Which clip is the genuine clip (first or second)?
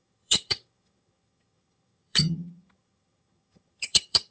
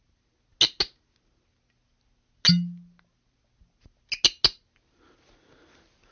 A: second